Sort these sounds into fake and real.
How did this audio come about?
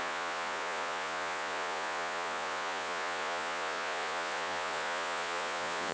fake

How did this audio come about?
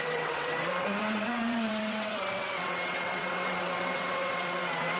fake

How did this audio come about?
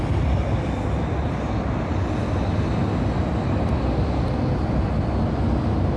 real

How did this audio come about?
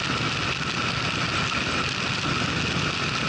real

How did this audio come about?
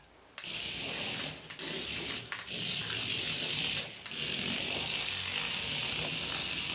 real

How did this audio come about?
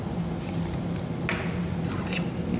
real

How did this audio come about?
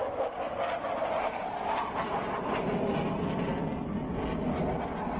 real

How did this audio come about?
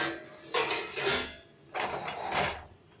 real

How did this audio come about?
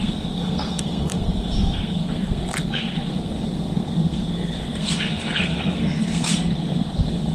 fake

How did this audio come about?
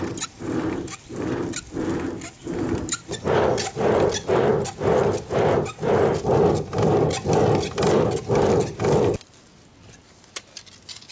real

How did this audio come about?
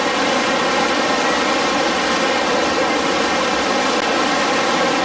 real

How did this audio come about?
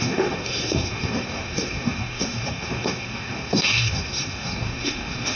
fake